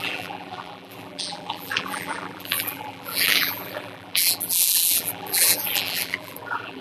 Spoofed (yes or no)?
yes